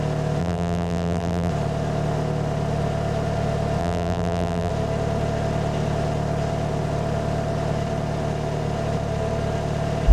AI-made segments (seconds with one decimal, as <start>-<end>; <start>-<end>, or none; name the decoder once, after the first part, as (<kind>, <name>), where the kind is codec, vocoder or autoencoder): 0.4-1.5 (vocoder, BigVGAN v2); 3.8-4.7